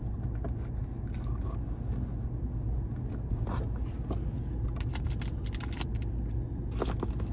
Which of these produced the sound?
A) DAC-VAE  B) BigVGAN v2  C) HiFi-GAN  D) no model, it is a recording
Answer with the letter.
D